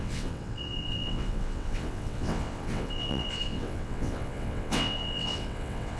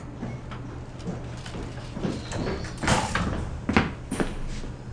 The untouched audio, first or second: second